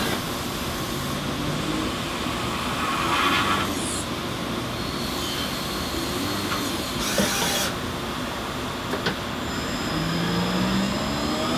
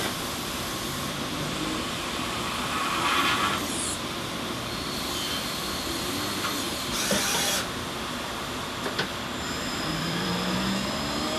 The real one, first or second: first